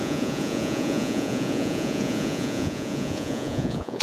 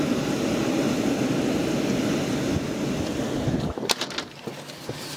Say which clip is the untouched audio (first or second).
second